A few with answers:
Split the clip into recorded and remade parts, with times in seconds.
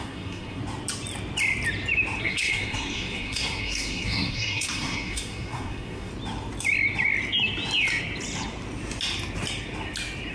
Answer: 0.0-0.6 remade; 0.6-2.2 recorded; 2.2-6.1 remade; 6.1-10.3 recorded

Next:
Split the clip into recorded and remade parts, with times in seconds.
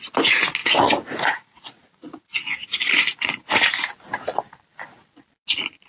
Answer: 0.0-0.6 recorded; 0.6-3.7 remade; 3.7-5.9 recorded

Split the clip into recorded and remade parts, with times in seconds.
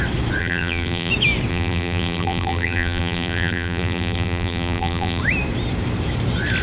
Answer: 0.0-0.4 recorded; 0.4-1.1 remade; 1.1-1.5 recorded; 1.5-5.2 remade; 5.2-6.6 recorded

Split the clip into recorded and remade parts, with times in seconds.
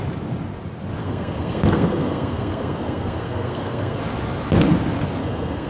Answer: 0.0-1.0 recorded; 1.0-4.0 remade; 4.0-5.2 recorded; 5.2-5.7 remade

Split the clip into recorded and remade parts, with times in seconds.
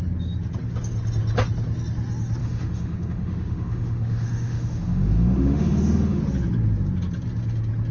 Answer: 0.0-2.4 recorded; 2.4-6.2 remade; 6.2-7.9 recorded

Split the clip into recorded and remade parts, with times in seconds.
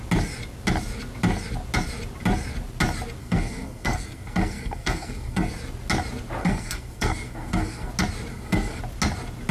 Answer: 0.0-3.2 recorded; 3.2-5.5 remade; 5.5-6.4 recorded; 6.4-7.9 remade; 7.9-8.3 recorded; 8.3-8.8 remade; 8.8-9.5 recorded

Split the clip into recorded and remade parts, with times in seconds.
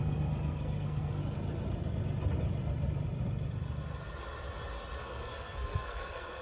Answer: 0.0-1.2 remade; 1.2-5.0 recorded; 5.0-6.4 remade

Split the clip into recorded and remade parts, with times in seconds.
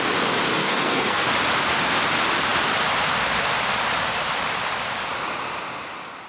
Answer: 0.0-0.6 recorded; 0.6-1.3 remade; 1.3-6.3 recorded